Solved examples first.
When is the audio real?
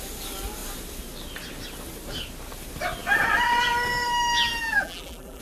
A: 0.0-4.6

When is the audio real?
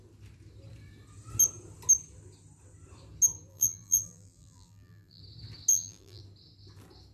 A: 0.0-3.5; 5.2-5.7; 6.2-7.1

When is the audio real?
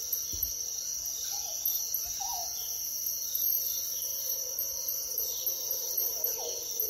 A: 0.0-4.1; 5.5-6.9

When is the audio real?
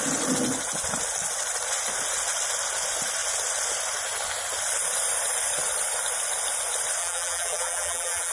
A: 0.0-7.0